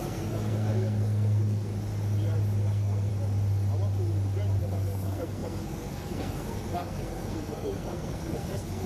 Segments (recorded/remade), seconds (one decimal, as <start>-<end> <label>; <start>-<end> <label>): 0.0-1.7 remade; 1.7-2.6 recorded; 2.6-3.1 remade; 3.1-4.6 recorded; 4.6-8.9 remade